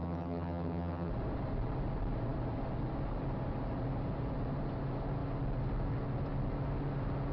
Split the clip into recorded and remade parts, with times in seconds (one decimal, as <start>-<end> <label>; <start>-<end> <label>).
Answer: 0.0-1.1 remade; 1.1-7.3 recorded